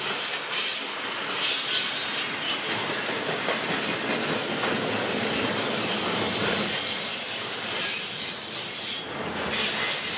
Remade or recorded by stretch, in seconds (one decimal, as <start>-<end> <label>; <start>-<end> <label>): 0.0-10.2 recorded